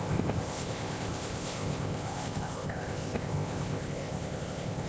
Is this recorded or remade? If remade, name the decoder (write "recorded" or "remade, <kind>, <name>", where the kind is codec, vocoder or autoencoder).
remade, codec, ZipCodec